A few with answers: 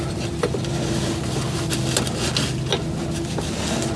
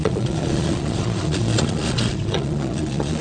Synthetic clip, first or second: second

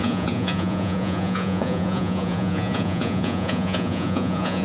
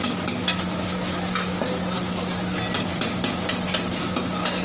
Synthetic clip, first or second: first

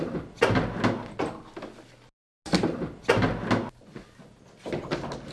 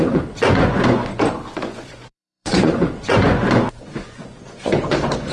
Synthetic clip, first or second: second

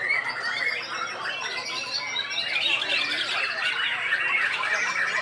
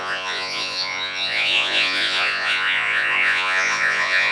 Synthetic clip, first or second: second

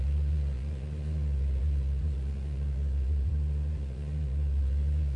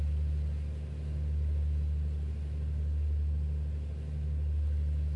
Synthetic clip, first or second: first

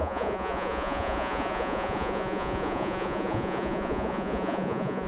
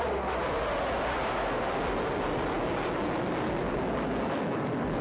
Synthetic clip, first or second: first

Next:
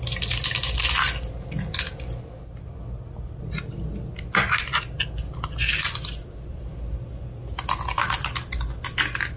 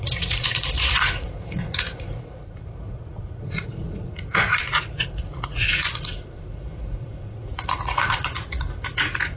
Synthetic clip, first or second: second